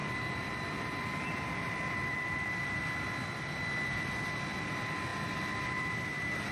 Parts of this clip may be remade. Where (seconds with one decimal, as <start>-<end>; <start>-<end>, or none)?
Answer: 0.0-2.8; 5.1-6.5